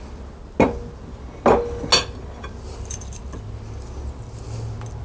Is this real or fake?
real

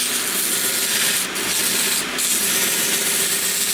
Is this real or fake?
real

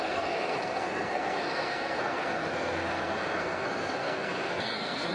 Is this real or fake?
fake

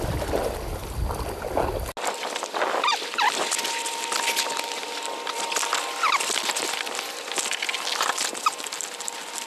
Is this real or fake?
real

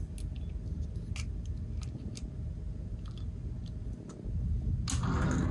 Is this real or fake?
real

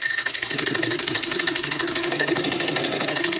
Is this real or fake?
fake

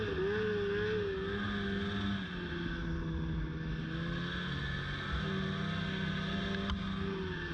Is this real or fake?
real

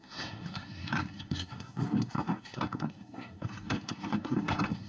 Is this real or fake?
fake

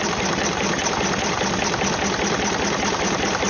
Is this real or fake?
real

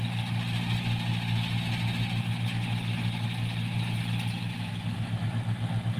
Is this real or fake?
real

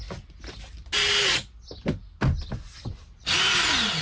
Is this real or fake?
real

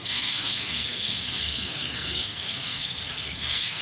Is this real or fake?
fake